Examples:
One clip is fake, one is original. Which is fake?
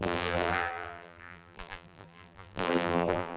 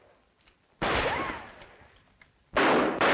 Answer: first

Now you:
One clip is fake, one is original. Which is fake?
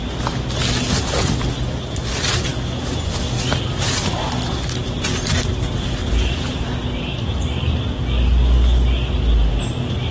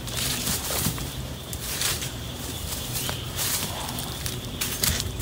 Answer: second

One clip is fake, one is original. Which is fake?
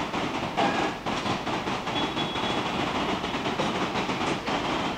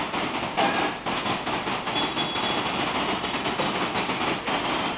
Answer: first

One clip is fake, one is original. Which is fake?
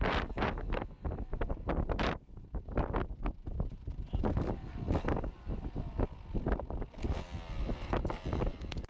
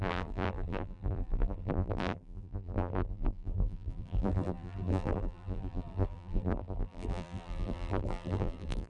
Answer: second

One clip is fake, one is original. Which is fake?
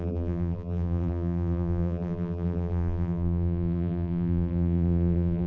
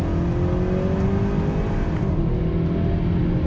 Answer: first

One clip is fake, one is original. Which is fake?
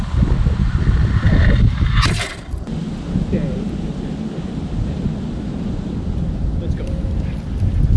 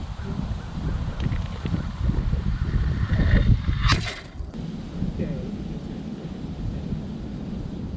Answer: second